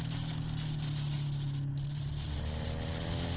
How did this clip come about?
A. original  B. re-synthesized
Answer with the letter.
A